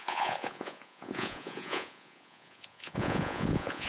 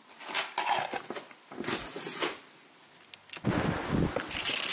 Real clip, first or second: second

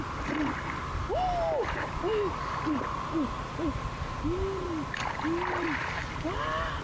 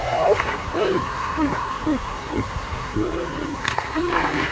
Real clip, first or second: first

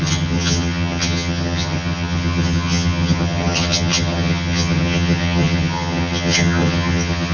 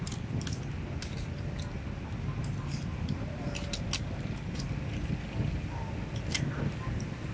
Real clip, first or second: second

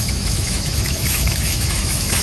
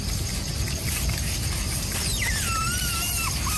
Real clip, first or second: second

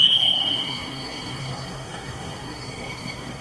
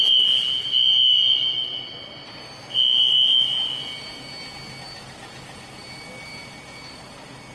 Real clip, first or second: second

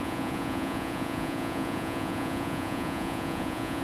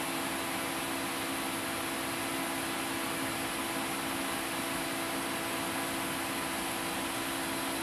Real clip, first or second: second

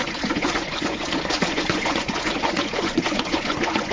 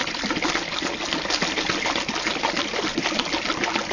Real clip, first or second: second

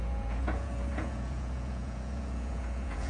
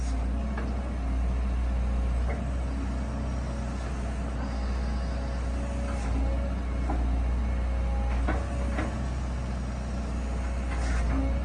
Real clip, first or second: second